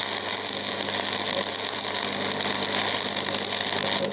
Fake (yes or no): no